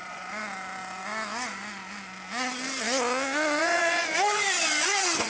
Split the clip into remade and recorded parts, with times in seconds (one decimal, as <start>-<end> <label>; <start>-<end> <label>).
0.0-0.4 remade; 0.4-3.6 recorded; 3.6-5.3 remade